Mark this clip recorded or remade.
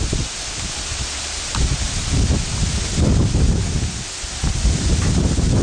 recorded